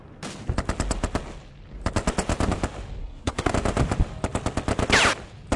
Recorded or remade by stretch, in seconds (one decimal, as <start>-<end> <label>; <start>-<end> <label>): 0.0-3.0 recorded; 3.0-3.5 remade; 3.5-5.6 recorded